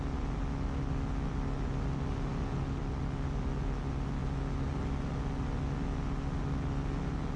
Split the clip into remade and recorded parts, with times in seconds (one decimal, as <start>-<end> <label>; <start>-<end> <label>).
0.0-7.4 recorded

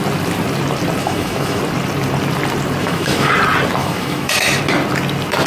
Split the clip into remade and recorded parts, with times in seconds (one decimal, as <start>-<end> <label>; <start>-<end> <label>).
0.0-1.0 recorded; 1.0-1.6 remade; 1.6-2.8 recorded; 2.8-3.3 remade; 3.3-3.8 recorded; 3.8-4.6 remade; 4.6-5.5 recorded

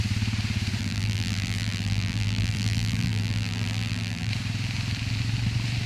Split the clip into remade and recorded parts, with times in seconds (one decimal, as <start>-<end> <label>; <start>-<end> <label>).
0.0-0.8 recorded; 0.8-4.3 remade; 4.3-5.9 recorded

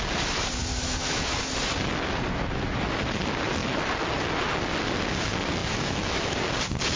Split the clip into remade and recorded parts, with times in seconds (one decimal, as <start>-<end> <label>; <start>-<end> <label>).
0.0-0.7 recorded; 0.7-1.4 remade; 1.4-5.6 recorded; 5.6-6.5 remade; 6.5-7.0 recorded

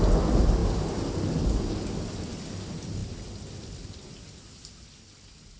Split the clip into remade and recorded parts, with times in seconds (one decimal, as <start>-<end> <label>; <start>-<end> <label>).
0.0-5.6 recorded

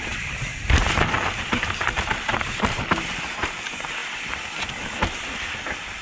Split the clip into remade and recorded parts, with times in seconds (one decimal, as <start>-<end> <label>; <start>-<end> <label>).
0.0-3.6 remade; 3.6-6.0 recorded